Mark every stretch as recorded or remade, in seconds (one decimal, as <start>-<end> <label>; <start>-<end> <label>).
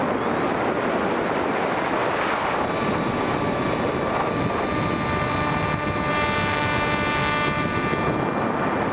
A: 0.0-8.9 recorded